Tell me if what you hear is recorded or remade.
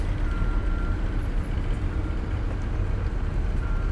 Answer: recorded